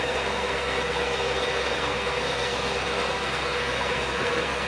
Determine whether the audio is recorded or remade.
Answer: remade